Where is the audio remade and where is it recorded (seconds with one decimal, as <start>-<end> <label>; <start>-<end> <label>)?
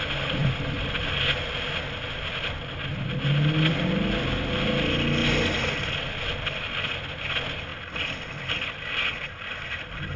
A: 0.0-10.2 recorded